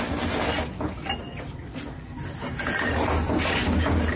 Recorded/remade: recorded